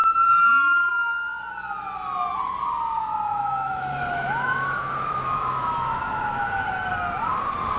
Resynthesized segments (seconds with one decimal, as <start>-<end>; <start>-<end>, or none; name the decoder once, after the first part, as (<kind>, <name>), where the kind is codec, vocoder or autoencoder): 3.3-6.7 (autoencoder, DAC-VAE)